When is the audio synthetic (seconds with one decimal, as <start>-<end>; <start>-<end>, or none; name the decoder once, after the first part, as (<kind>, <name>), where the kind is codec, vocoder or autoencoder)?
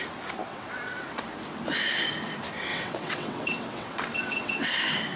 0.5-1.2 (vocoder, WaveNeXt); 2.7-4.7